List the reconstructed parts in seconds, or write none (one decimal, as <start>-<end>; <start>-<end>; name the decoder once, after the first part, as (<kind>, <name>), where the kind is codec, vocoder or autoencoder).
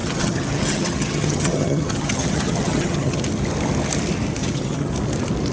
0.0-3.2 (vocoder, HiFi-GAN); 4.4-4.9